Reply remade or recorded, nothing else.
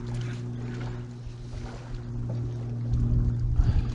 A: recorded